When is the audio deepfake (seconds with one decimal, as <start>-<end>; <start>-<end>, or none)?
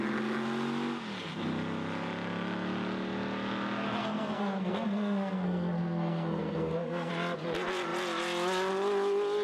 4.0-7.1